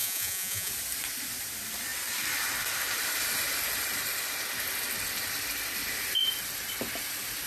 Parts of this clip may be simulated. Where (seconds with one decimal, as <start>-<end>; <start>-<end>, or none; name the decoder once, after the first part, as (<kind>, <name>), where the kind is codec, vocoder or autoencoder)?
0.0-0.7 (vocoder, Vocos)